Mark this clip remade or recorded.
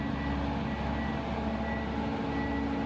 recorded